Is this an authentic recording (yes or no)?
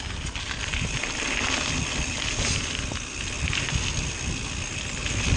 yes